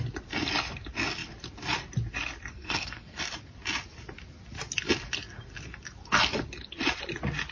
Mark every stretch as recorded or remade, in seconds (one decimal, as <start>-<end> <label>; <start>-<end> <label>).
0.0-2.5 recorded; 2.5-3.2 remade; 3.2-7.5 recorded